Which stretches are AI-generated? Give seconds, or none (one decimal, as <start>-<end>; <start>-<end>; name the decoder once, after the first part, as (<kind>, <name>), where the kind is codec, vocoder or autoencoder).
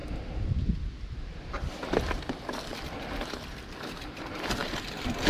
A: 0.0-4.6 (vocoder, BigVGAN v2)